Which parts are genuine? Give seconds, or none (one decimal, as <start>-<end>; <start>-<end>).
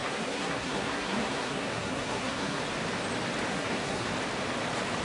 2.6-3.5; 4.1-5.0